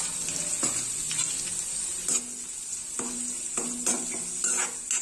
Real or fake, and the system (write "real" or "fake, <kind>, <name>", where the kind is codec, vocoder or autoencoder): real